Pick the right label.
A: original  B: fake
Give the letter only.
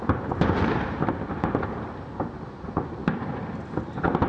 A